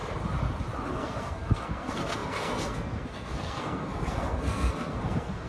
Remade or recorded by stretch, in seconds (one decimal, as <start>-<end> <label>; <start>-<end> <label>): 0.0-0.9 recorded; 0.9-5.5 remade